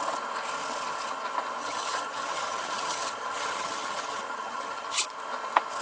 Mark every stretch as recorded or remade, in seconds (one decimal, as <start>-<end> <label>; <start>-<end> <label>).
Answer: 0.0-1.6 recorded; 1.6-5.1 remade; 5.1-5.8 recorded